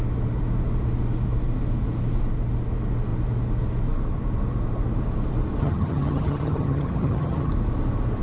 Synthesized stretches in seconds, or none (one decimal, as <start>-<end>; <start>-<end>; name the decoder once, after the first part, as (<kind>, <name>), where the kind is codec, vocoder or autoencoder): 5.6-7.5 (vocoder, HiFi-GAN)